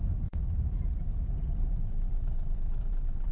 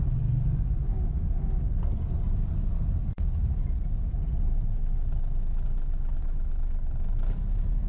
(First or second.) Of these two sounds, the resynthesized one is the first